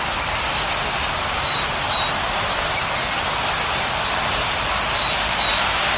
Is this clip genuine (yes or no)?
no